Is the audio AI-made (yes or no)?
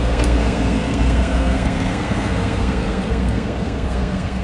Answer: yes